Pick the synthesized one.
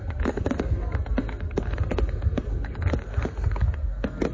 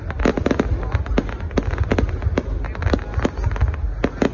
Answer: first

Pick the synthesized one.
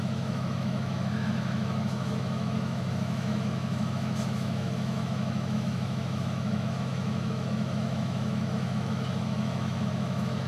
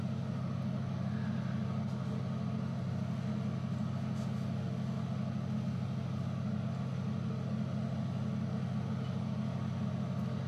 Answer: first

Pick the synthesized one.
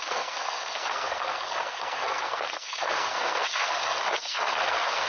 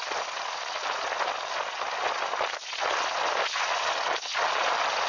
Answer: first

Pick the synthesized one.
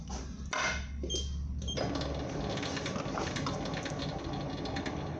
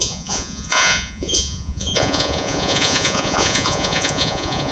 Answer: second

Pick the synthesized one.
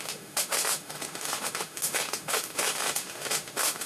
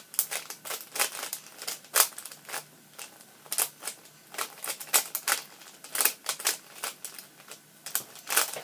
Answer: first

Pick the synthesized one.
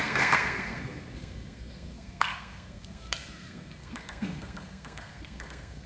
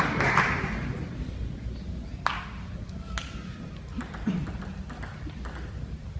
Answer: first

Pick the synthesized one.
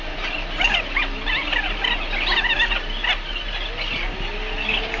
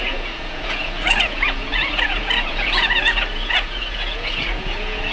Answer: second